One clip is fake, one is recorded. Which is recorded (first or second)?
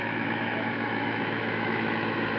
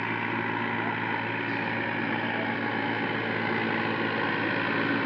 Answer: second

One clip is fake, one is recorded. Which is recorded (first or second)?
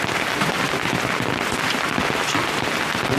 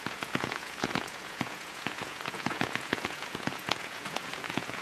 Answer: first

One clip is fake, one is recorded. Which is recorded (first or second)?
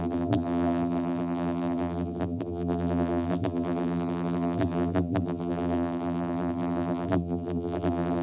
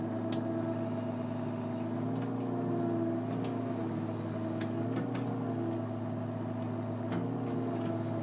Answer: second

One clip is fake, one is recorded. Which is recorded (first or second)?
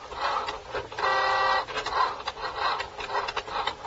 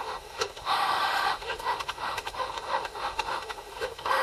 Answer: first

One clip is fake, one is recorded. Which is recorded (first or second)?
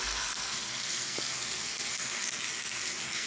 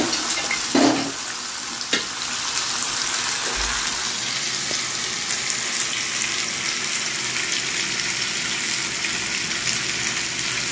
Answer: second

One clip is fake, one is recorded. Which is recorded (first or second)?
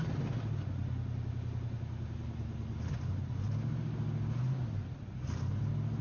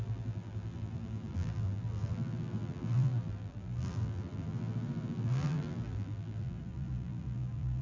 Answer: first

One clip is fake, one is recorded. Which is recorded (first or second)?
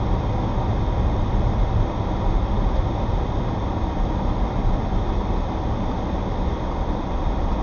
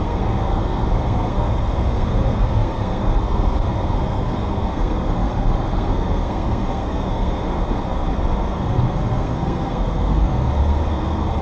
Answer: first